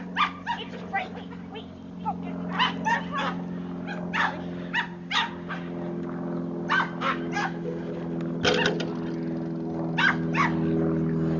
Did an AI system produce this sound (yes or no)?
no